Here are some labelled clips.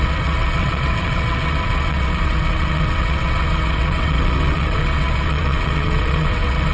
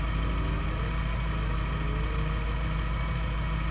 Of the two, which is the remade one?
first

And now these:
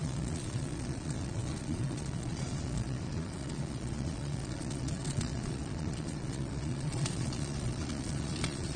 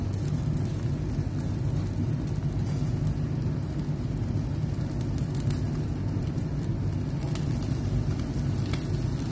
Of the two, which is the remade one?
first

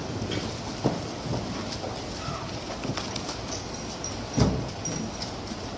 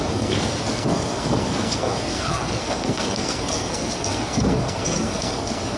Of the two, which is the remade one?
second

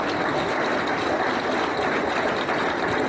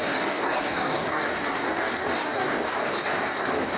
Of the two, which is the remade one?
second